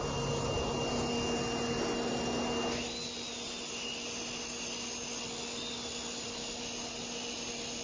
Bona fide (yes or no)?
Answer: yes